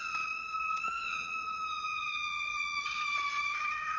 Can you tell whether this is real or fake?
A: fake